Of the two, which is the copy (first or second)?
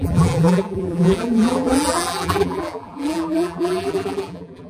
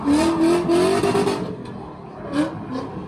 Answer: first